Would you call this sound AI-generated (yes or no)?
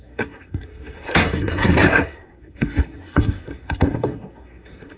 yes